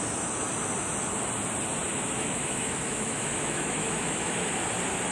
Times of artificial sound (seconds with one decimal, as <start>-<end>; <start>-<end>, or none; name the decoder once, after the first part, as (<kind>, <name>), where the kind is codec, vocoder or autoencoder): 1.9-4.6 (autoencoder, DAC-VAE)